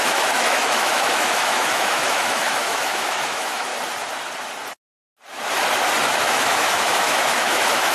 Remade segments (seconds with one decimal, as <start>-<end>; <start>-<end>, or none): 0.0-3.7; 6.2-7.9